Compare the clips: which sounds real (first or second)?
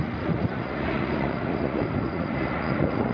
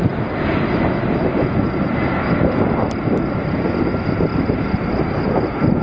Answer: second